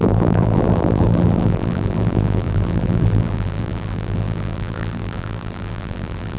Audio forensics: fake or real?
fake